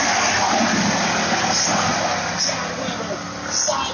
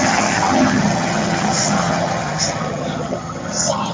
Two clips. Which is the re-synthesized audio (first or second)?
second